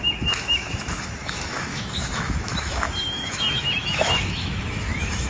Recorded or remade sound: remade